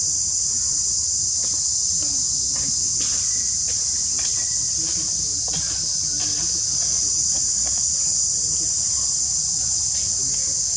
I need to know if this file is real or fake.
real